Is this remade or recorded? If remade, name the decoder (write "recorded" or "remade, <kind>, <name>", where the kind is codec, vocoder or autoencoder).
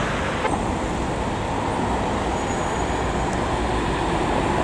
recorded